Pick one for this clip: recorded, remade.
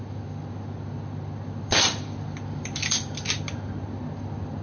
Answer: recorded